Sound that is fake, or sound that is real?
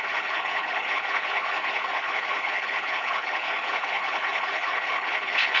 fake